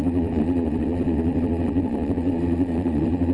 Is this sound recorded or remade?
remade